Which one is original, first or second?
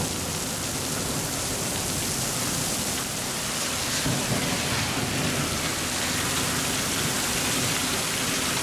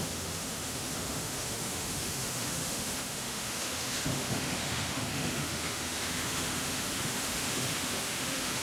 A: first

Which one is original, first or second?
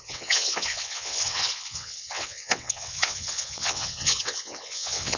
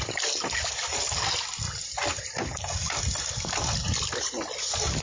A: second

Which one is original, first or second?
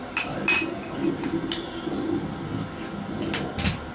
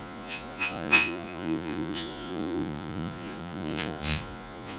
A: first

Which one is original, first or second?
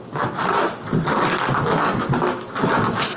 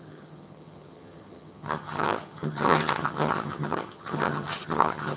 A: first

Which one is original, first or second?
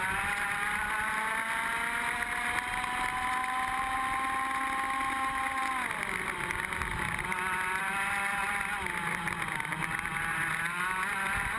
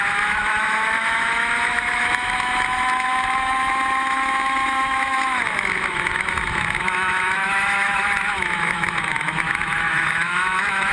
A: first